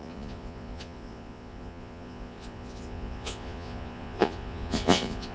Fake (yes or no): yes